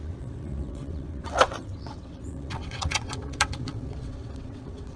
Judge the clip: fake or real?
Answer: fake